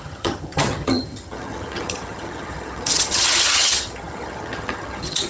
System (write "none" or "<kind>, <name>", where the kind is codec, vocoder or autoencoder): vocoder, HiFi-GAN